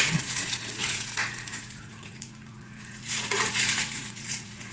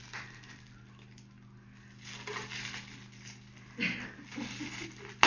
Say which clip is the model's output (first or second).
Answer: first